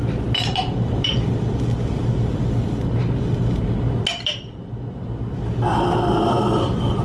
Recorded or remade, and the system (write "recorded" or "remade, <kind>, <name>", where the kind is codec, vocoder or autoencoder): recorded